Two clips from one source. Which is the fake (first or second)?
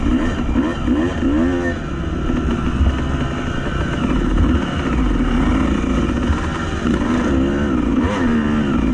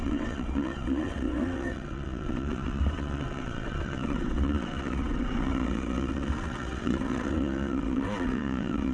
second